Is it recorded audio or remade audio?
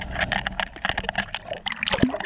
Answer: recorded